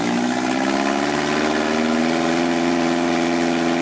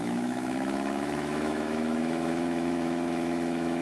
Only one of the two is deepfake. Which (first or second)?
second